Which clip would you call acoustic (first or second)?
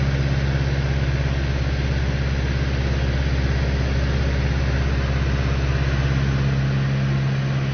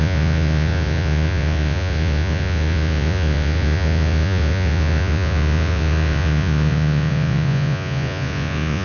first